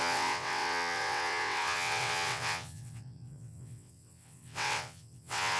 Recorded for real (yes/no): no